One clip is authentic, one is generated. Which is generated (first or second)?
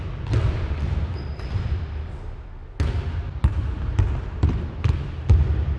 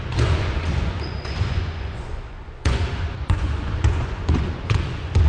second